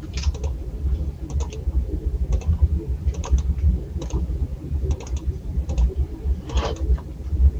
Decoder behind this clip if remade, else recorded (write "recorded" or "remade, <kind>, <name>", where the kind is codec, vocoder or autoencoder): remade, vocoder, BigVGAN v2